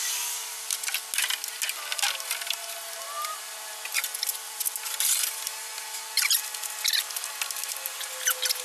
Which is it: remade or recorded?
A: recorded